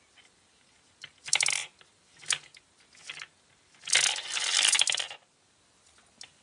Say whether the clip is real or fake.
real